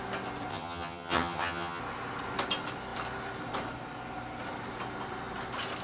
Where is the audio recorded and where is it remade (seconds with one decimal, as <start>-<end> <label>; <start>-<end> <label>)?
0.0-0.5 recorded; 0.5-1.8 remade; 1.8-5.8 recorded